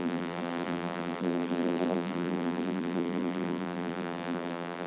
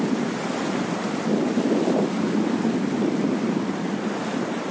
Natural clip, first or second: second